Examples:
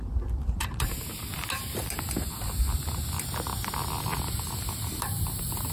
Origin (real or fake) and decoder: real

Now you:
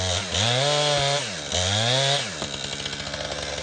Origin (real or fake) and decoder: real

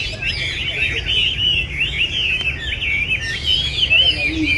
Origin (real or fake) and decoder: real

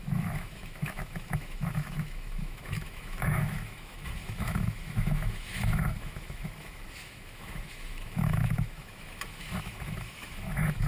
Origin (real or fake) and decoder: fake, autoencoder, DAC-VAE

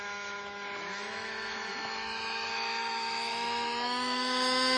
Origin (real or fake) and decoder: fake, autoencoder, DAC-VAE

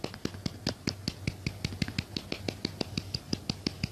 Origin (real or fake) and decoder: real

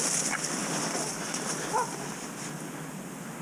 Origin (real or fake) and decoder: real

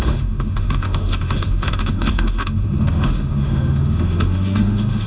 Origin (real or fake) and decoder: fake, autoencoder, DAC-VAE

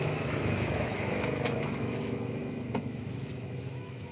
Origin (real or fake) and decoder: fake, autoencoder, DAC-VAE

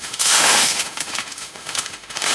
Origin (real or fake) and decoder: fake, autoencoder, DAC-VAE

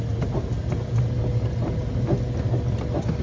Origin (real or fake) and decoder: real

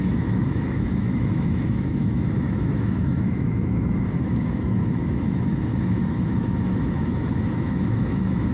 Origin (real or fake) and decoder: fake, autoencoder, DAC-VAE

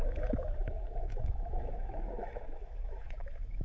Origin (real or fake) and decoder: fake, autoencoder, DAC-VAE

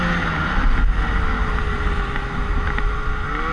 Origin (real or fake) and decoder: real